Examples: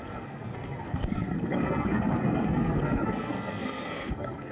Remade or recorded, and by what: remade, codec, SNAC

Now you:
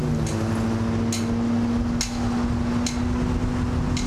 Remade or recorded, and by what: recorded